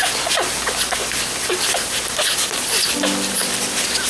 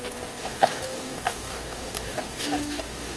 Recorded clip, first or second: first